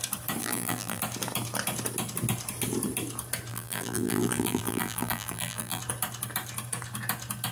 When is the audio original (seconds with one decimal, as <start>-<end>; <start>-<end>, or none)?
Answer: 0.0-0.4; 1.0-3.5; 5.8-7.5